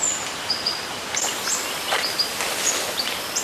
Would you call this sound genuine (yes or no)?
yes